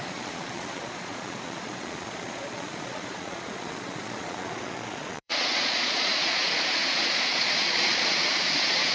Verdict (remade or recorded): remade